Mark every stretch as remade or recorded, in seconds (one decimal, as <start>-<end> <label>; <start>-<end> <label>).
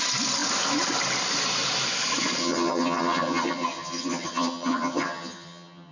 0.0-2.4 recorded; 2.4-5.9 remade